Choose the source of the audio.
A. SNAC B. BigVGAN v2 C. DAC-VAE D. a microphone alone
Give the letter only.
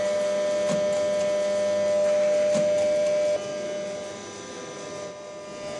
D